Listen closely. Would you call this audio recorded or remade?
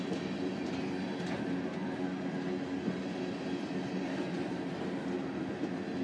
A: recorded